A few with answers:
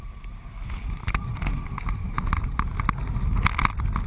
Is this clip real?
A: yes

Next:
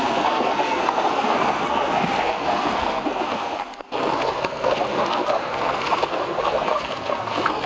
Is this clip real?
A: no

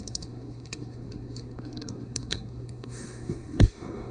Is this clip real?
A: no